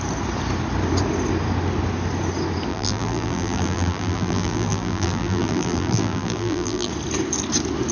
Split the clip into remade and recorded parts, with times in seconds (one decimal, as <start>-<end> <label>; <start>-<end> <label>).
0.0-2.7 recorded; 2.7-6.9 remade; 6.9-7.9 recorded